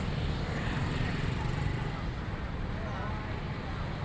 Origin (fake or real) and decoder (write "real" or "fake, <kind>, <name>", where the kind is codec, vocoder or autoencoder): real